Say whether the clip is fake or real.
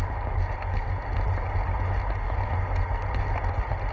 real